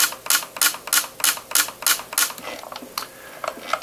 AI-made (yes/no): no